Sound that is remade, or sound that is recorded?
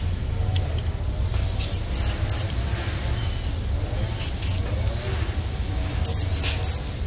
recorded